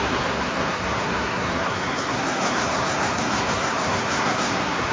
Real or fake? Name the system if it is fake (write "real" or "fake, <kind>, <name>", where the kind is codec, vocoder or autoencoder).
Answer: fake, codec, SNAC